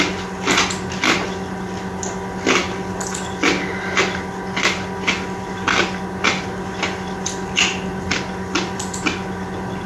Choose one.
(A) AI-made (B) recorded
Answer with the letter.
B